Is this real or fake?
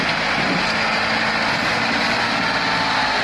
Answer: real